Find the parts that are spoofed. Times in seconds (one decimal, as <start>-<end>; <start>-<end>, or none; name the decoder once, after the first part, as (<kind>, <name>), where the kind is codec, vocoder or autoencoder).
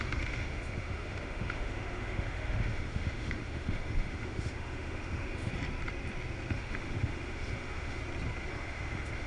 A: 0.0-5.5 (autoencoder, DAC-VAE); 6.5-8.0; 8.5-9.3